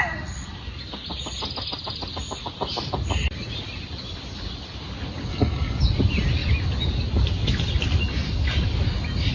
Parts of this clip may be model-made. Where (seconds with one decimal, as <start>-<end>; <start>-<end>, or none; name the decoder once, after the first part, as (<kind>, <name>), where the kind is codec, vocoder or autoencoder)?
5.3-5.8 (codec, DAC)